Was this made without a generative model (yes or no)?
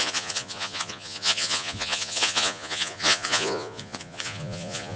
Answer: no